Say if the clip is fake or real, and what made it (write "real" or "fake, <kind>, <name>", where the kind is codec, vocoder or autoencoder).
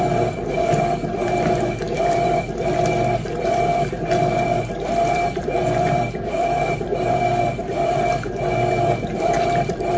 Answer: fake, vocoder, BigVGAN v2